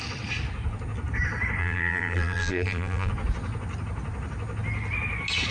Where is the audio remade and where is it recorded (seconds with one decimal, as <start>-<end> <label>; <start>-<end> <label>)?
0.0-1.6 recorded; 1.6-3.1 remade; 3.1-5.5 recorded

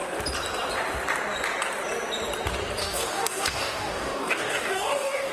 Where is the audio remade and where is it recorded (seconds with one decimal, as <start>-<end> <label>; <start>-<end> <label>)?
0.0-2.8 recorded; 2.8-5.3 remade

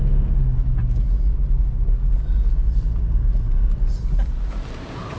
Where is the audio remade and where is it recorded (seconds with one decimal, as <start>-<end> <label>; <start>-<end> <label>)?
0.0-5.2 recorded

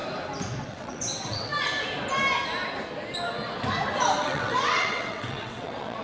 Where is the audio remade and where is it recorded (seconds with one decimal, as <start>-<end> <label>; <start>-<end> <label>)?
0.0-0.6 recorded; 0.6-1.5 remade; 1.5-4.2 recorded; 4.2-6.0 remade

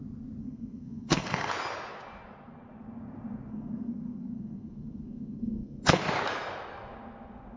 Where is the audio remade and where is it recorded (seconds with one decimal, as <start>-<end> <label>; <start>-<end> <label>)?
0.0-0.4 recorded; 0.4-1.5 remade; 1.5-3.5 recorded; 3.5-6.0 remade; 6.0-7.6 recorded

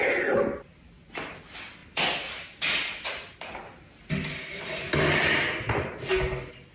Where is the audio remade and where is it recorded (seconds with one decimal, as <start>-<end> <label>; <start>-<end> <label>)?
0.0-6.7 recorded

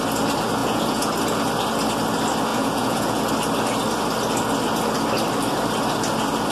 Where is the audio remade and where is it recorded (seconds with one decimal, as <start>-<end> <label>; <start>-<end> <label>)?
0.0-0.6 recorded; 0.6-1.1 remade; 1.1-2.5 recorded; 2.5-3.3 remade; 3.3-6.5 recorded

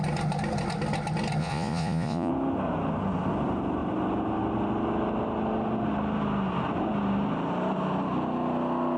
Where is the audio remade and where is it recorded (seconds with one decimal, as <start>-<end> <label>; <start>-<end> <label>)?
0.0-1.4 recorded; 1.4-2.3 remade; 2.3-9.0 recorded